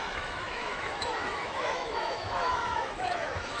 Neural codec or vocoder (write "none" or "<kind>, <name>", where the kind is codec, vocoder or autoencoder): autoencoder, DAC-VAE